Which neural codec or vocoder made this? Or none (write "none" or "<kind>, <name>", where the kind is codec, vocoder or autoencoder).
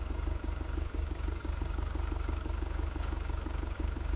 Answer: codec, DAC